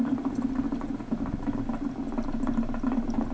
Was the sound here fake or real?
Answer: real